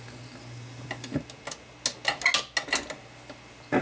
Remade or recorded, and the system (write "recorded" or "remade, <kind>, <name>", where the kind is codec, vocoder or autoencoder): recorded